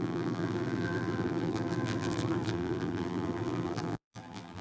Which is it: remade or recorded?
remade